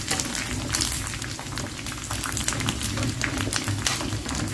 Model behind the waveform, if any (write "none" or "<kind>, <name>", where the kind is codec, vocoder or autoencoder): none